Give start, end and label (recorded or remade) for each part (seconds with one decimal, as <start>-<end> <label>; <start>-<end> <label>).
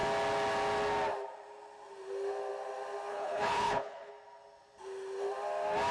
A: 0.0-3.1 recorded; 3.1-4.1 remade; 4.1-5.9 recorded